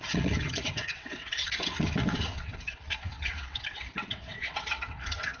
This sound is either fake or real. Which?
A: fake